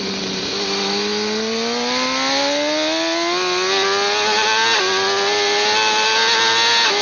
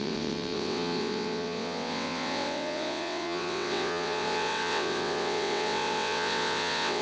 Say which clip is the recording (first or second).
first